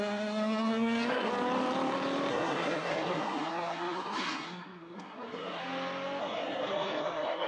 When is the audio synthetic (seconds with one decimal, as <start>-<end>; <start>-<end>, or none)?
0.0-1.3; 2.3-5.6; 6.2-7.5